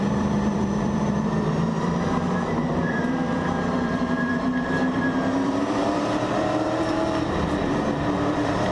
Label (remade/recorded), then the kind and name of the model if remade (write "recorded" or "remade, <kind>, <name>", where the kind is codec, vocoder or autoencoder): remade, vocoder, BigVGAN v2